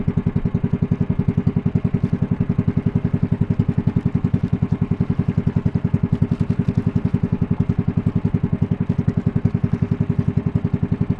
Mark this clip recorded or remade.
recorded